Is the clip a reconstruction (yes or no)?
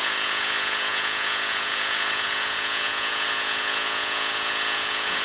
yes